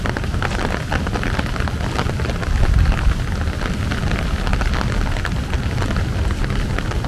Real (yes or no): yes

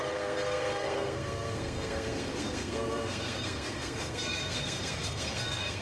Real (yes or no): no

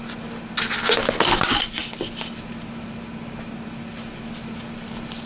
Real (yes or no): yes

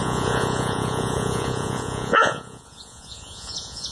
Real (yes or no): no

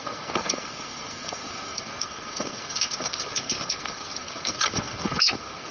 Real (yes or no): no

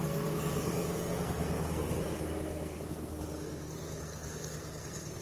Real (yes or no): no